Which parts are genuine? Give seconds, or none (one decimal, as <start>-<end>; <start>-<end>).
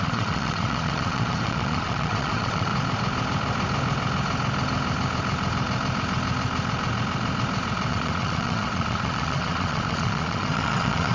2.7-7.9